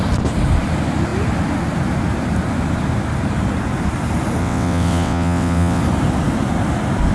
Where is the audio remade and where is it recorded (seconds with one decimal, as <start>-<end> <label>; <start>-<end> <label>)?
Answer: 0.0-4.4 recorded; 4.4-5.8 remade; 5.8-7.1 recorded